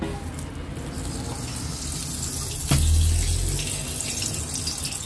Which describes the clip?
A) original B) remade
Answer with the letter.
A